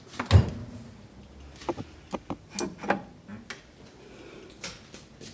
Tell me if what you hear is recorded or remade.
recorded